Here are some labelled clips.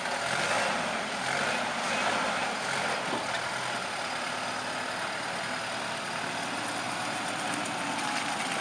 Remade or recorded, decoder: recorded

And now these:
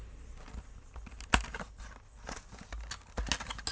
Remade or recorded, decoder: recorded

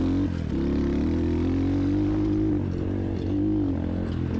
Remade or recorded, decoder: recorded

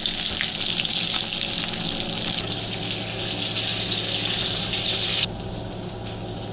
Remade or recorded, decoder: recorded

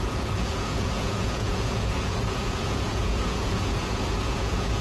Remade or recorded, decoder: remade, vocoder, Vocos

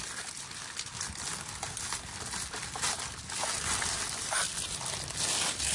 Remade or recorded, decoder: recorded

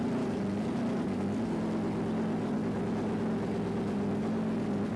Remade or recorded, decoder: recorded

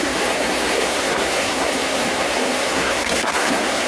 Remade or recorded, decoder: remade, codec, SNAC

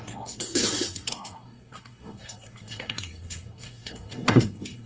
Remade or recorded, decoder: remade, codec, SNAC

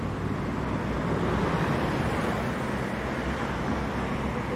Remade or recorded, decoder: recorded